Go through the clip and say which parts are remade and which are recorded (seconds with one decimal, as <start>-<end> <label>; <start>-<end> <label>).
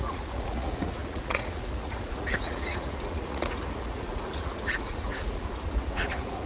0.0-6.5 remade